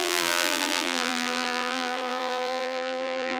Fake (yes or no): yes